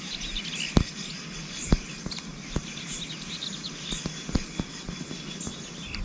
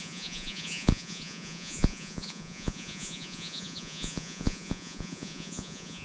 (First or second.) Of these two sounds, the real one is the first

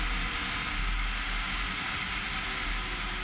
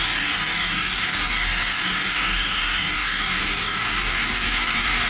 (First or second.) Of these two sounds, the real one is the first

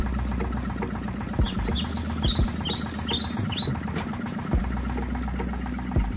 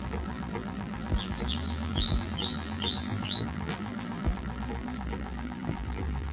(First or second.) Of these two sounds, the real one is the first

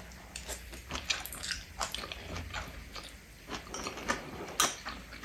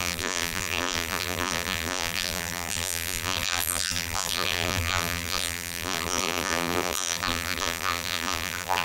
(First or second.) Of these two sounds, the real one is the first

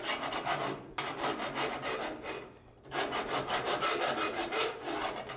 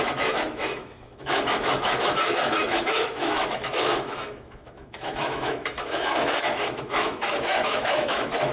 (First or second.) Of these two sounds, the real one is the first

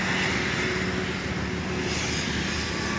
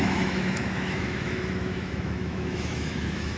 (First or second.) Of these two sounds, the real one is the first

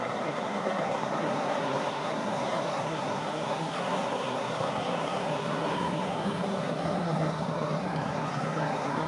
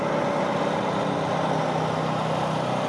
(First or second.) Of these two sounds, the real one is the second